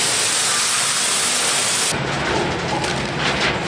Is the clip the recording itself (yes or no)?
yes